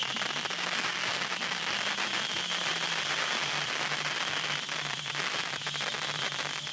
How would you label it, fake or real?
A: real